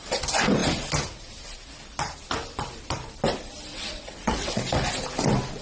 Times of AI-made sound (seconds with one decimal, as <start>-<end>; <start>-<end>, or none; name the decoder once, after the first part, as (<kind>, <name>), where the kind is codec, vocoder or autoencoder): 3.7-4.6 (vocoder, WaveNeXt)